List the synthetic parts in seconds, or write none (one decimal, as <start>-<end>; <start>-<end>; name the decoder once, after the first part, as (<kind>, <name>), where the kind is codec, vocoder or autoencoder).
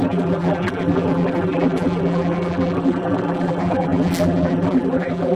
0.0-5.3 (vocoder, BigVGAN v2)